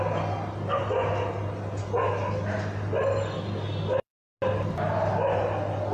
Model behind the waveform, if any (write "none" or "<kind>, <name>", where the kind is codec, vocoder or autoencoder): none